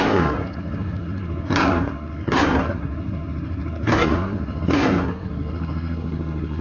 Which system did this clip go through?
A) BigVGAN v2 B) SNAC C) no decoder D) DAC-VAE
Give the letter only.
B